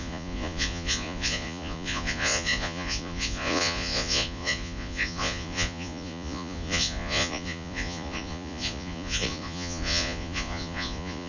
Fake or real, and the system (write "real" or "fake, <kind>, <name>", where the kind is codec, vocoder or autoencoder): fake, vocoder, Vocos